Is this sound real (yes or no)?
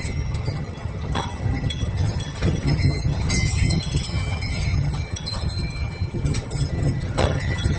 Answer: no